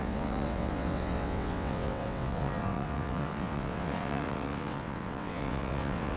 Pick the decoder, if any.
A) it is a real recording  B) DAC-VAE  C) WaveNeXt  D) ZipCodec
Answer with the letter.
C